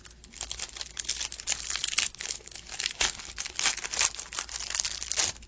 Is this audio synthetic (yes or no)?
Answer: no